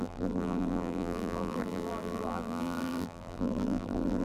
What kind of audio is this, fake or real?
fake